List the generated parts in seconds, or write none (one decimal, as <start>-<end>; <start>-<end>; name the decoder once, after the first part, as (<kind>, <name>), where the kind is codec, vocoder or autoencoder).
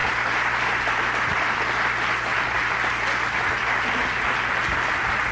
none